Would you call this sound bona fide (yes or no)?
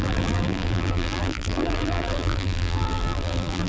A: no